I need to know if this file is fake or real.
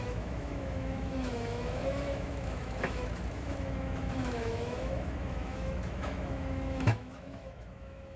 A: fake